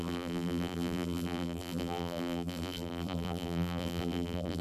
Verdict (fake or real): fake